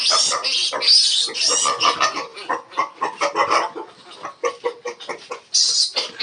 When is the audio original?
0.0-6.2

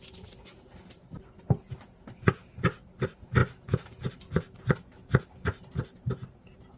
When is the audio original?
0.0-6.8

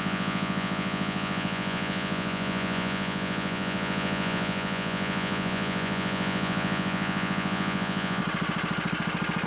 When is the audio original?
8.2-9.5

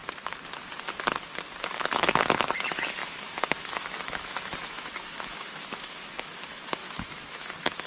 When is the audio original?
0.0-1.6

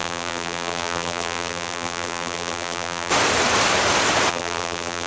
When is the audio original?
3.1-4.3

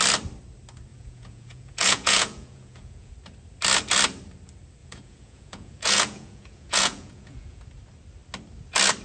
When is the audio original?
0.0-0.9; 3.1-4.8; 7.6-9.0

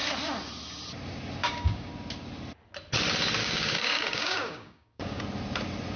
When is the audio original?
0.0-1.4; 1.9-3.4; 5.2-6.0